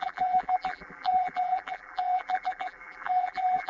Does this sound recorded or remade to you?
remade